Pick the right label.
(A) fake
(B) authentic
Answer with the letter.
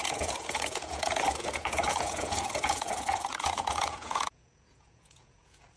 A